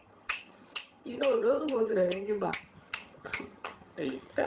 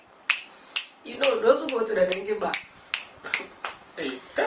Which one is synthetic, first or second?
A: first